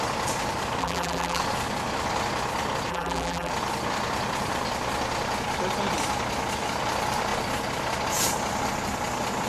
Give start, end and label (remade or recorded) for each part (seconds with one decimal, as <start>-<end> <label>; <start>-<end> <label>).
0.0-0.8 recorded; 0.8-1.4 remade; 1.4-2.9 recorded; 2.9-3.5 remade; 3.5-9.5 recorded